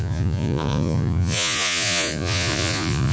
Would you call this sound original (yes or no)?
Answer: no